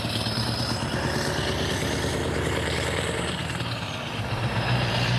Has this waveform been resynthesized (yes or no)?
yes